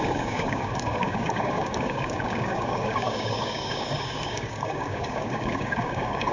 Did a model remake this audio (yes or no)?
yes